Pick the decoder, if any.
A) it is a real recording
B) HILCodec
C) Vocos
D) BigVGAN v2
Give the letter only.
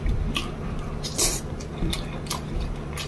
D